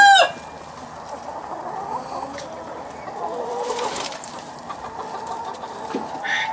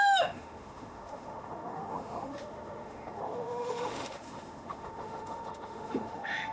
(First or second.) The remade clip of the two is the second